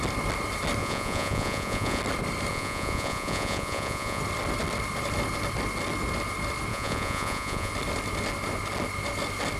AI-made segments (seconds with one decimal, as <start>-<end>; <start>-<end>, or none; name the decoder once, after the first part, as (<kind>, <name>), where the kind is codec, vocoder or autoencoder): 0.8-2.0 (vocoder, Vocos); 2.5-4.2; 6.7-7.7